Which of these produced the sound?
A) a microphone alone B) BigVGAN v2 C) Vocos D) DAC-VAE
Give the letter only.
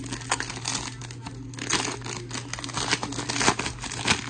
A